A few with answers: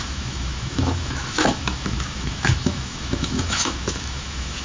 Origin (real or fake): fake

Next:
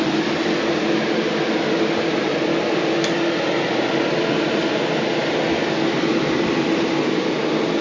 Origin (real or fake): real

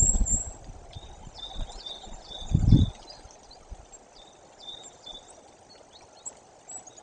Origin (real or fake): real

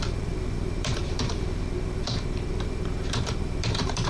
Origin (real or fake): fake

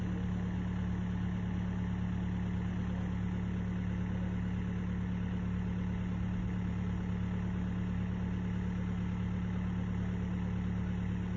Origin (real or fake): real